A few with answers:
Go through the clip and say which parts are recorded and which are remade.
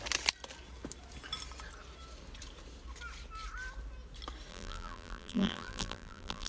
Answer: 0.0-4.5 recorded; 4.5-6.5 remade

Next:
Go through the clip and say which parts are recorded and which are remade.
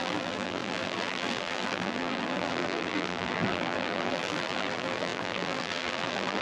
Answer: 0.0-6.4 remade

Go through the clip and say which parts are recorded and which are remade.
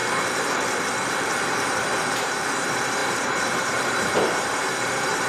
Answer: 0.0-1.1 recorded; 1.1-5.3 remade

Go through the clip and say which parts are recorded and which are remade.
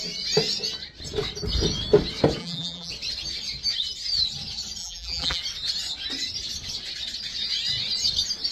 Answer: 0.0-2.4 recorded; 2.4-2.9 remade; 2.9-4.8 recorded; 4.8-5.4 remade; 5.4-8.5 recorded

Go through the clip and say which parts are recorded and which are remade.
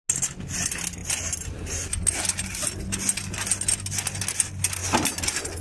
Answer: 0.0-5.6 recorded